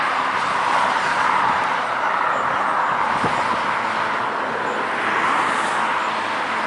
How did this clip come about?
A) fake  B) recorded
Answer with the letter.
B